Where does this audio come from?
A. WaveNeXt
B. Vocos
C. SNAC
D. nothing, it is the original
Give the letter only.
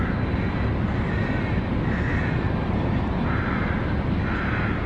D